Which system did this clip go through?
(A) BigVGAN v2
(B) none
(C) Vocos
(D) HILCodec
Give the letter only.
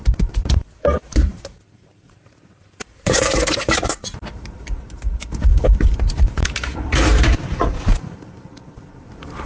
A